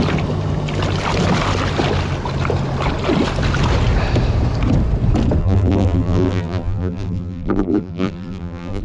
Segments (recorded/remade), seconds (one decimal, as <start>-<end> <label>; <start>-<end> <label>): 0.0-5.4 recorded; 5.4-8.8 remade